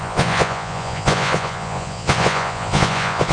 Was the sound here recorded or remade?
remade